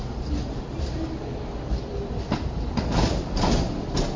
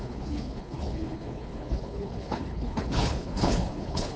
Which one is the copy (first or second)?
second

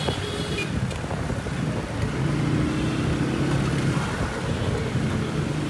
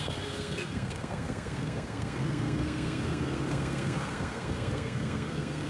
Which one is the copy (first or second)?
second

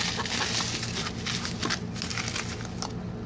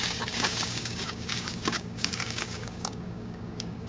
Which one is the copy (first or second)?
second